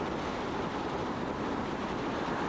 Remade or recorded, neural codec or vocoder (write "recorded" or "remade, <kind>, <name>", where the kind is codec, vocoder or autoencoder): recorded